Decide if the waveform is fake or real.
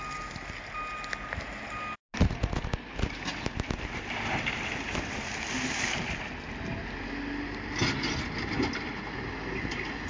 real